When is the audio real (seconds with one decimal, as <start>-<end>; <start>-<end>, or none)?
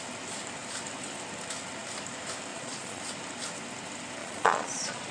0.0-2.5; 3.0-4.2